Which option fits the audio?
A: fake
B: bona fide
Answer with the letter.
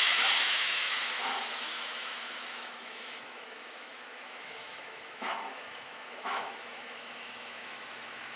A